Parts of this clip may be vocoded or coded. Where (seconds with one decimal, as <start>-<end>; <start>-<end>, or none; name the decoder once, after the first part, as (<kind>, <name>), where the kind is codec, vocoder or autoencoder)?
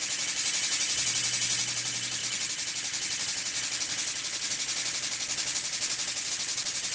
none